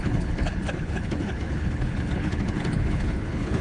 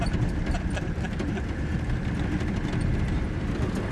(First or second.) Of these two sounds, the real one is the second